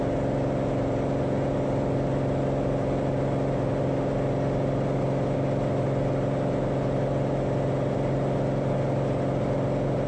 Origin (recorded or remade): recorded